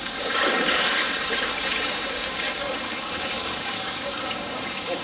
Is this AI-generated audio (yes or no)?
yes